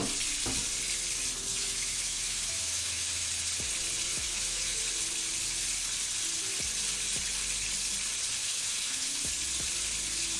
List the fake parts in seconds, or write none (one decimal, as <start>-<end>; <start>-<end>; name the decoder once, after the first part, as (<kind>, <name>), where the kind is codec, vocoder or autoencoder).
1.5-3.3 (autoencoder, DAC-VAE); 4.1-4.8; 8.4-9.3